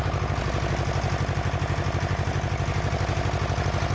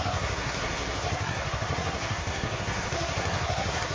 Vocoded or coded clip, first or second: second